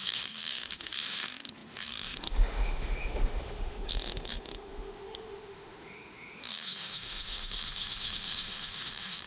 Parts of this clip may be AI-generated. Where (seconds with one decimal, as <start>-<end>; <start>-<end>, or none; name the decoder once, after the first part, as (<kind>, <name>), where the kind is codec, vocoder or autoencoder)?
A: 0.0-9.3 (autoencoder, DAC-VAE)